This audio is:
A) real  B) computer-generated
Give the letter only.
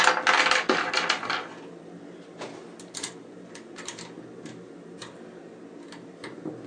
A